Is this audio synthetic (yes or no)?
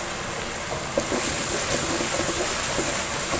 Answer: no